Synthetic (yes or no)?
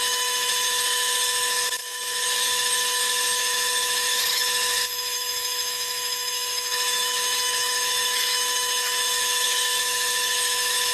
yes